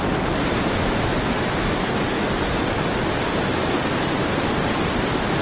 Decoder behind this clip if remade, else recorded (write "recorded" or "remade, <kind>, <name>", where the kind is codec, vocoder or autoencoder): recorded